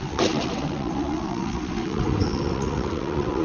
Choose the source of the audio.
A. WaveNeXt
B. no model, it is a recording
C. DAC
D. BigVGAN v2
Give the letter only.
A